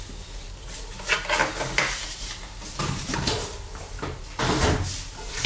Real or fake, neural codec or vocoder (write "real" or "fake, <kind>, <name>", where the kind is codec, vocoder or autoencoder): real